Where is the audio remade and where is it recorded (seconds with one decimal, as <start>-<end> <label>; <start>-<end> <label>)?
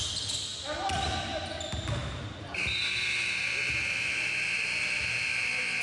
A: 0.0-5.8 recorded